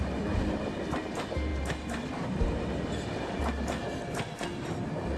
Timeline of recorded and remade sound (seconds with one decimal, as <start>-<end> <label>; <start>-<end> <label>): 0.0-5.2 recorded